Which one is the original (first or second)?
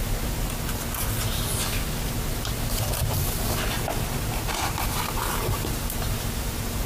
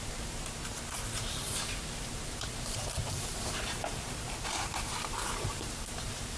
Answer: first